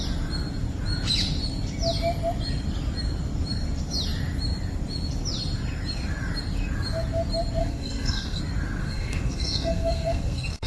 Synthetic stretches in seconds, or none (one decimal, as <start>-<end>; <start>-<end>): 7.6-8.4; 8.8-10.7